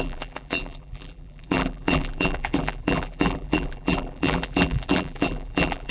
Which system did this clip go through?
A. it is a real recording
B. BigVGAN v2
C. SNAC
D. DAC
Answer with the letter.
B